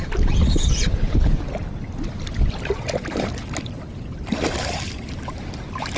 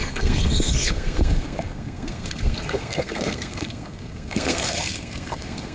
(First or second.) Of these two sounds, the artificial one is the second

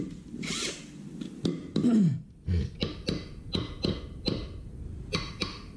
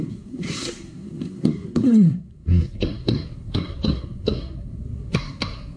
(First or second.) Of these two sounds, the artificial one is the second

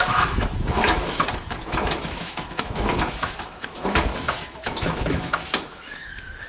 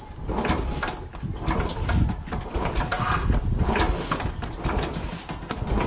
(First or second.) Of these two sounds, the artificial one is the first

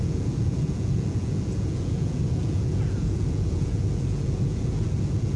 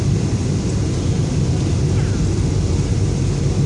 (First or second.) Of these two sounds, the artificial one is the first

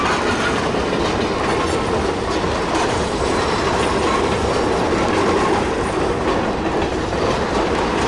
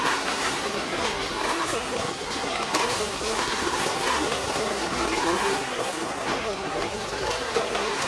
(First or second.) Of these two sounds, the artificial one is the second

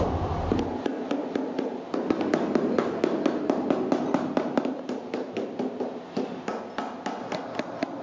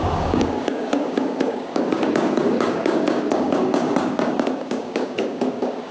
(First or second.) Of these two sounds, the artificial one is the second